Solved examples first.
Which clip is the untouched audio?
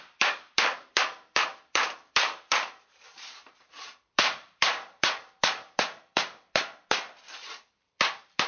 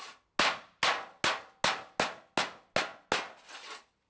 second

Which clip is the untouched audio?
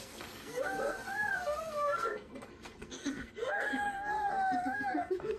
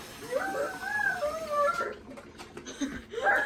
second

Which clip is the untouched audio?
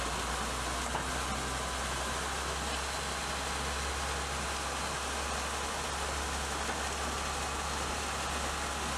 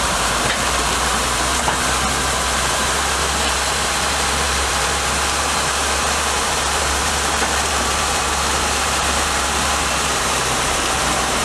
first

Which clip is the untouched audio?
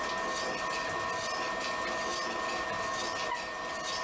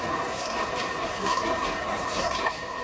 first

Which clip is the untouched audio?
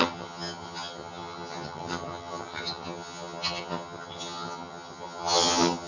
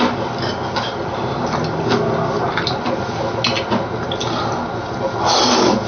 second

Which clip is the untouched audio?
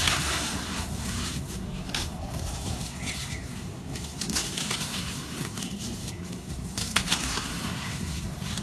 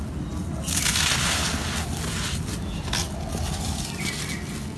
second